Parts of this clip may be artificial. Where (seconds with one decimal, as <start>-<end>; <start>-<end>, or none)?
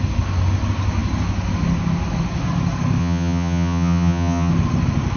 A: 3.0-4.5